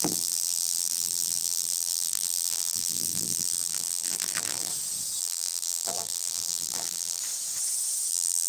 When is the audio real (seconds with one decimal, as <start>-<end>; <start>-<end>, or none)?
4.7-5.2; 7.2-8.1